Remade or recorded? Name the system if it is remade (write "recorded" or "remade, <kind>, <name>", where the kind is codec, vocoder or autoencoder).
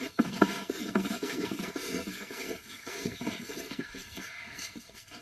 remade, codec, SNAC